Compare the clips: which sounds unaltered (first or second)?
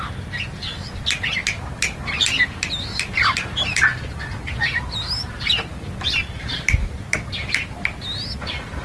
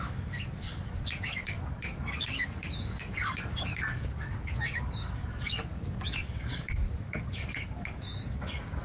first